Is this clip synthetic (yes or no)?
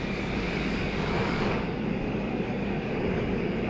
yes